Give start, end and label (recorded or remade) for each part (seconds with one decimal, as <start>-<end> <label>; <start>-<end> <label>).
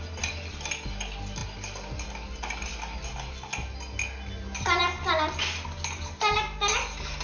0.0-7.2 recorded